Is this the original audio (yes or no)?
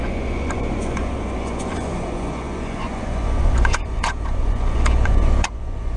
no